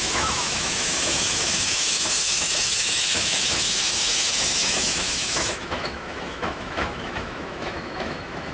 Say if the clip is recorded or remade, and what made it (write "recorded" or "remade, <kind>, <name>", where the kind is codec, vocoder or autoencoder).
remade, autoencoder, DAC-VAE